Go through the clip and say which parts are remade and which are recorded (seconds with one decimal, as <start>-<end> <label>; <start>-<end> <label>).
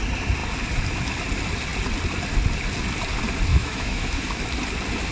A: 0.0-3.5 recorded; 3.5-4.2 remade; 4.2-5.1 recorded